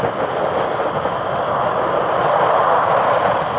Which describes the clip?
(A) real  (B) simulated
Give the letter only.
A